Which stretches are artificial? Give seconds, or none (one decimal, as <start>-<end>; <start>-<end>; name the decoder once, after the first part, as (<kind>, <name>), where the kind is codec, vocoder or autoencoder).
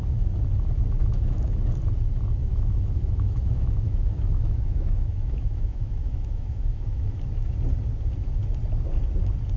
1.0-1.6 (autoencoder, DAC-VAE); 2.5-7.2